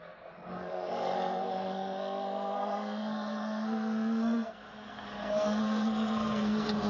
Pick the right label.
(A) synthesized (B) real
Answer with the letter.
A